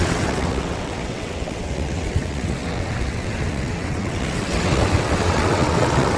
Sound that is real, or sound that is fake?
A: fake